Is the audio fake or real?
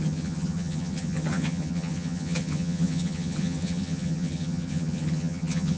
fake